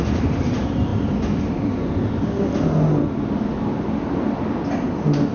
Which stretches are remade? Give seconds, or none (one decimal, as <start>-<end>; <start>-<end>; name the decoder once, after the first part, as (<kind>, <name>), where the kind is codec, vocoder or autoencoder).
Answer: none

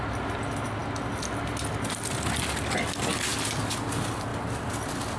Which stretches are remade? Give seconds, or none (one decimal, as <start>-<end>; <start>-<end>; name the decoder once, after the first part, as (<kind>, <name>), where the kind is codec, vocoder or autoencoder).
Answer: none